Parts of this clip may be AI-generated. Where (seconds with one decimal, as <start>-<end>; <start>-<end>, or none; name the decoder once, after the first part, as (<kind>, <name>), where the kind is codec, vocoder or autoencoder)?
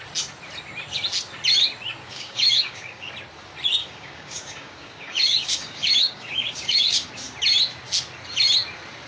2.0-3.1 (codec, DAC); 3.8-7.1